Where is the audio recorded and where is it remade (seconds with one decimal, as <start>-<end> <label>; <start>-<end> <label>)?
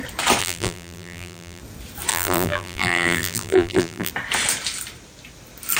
0.0-0.4 recorded; 0.4-1.6 remade; 1.6-2.1 recorded; 2.1-4.1 remade; 4.1-5.8 recorded